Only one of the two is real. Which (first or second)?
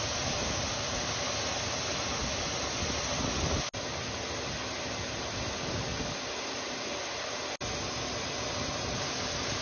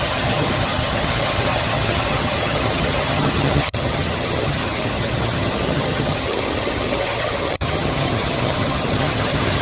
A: first